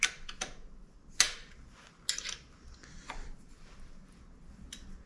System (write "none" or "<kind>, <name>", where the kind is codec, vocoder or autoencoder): none